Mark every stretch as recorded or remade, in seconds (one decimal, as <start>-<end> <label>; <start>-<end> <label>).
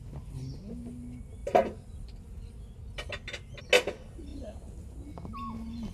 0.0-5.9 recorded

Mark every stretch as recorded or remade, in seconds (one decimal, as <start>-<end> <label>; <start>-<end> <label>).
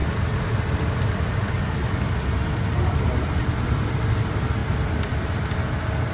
0.0-1.2 remade; 1.2-4.6 recorded; 4.6-5.5 remade; 5.5-6.1 recorded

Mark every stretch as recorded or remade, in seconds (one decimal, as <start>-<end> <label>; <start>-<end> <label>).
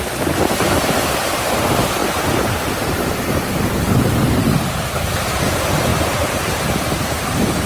0.0-7.7 remade